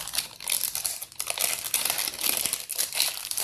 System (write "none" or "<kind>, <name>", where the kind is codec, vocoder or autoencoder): none